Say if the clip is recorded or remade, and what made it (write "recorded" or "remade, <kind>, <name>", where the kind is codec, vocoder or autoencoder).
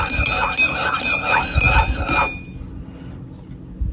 recorded